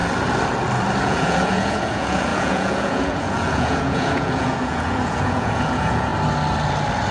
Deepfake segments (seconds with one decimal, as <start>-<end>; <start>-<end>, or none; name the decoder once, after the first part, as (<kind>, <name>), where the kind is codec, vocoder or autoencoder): 1.0-6.1 (vocoder, Vocos)